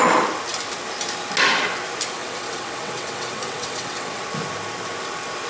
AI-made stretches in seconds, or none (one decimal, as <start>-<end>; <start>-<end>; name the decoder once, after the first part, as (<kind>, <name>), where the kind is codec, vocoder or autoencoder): 2.2-4.2 (vocoder, WaveNeXt)